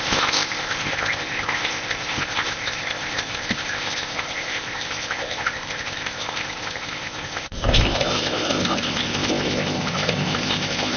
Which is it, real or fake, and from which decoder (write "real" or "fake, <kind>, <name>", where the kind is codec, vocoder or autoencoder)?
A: fake, codec, ZipCodec